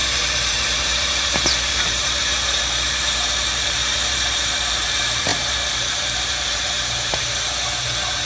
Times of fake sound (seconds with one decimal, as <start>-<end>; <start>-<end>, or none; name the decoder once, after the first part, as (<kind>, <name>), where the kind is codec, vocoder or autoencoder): 0.0-8.3 (vocoder, BigVGAN v2)